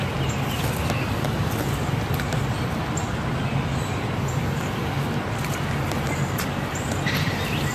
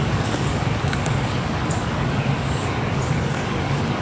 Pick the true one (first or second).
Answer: first